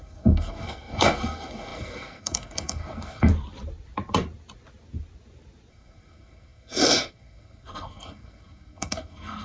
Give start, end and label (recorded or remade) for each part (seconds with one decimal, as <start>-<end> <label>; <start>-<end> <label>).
0.0-3.3 remade; 3.3-5.7 recorded; 5.7-9.4 remade